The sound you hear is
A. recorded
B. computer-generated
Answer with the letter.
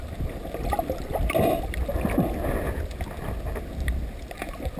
A